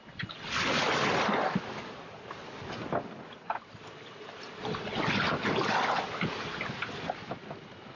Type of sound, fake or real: real